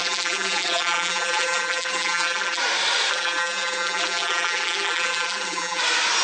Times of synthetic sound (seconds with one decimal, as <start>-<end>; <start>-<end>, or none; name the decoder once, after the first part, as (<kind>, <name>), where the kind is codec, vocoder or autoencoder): 0.0-2.6 (vocoder, BigVGAN v2); 3.1-5.8